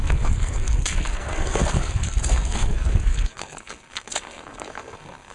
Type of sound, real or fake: fake